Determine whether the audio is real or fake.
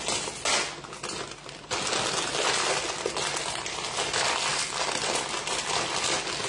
real